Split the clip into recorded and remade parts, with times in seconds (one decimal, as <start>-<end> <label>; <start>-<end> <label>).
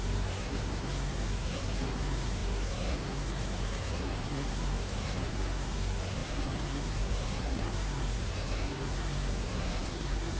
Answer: 0.0-10.4 remade